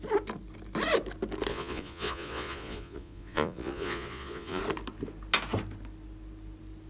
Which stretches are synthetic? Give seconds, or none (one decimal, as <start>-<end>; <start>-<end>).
1.5-4.6

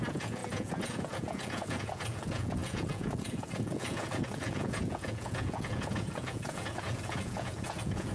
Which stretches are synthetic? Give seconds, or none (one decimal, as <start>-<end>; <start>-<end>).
0.0-8.1

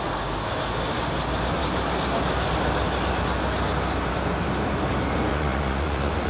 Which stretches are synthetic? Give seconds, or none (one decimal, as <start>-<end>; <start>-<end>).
5.3-6.3

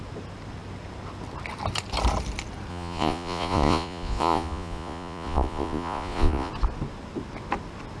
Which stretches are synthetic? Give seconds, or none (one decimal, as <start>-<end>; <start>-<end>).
2.7-6.5

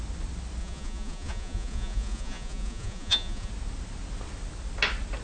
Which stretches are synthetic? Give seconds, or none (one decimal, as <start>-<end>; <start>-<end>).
0.6-3.5

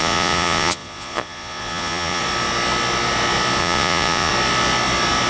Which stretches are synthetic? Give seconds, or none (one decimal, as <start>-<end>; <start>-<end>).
0.0-2.2; 3.6-4.3

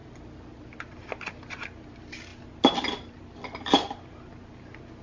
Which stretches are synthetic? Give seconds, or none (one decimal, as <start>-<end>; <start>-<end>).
none